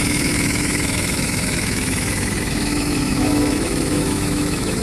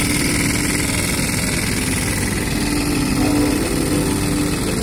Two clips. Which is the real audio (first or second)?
second